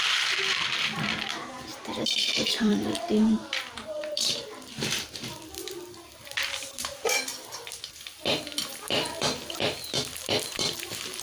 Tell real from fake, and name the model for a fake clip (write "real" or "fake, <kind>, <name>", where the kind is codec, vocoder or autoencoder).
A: fake, vocoder, BigVGAN v2